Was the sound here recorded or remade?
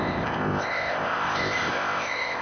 remade